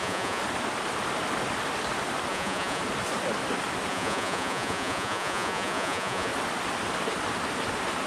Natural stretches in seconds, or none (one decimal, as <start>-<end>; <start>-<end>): 0.4-2.3; 2.8-3.9; 6.3-8.1